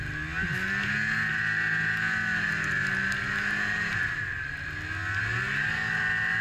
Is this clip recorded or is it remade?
recorded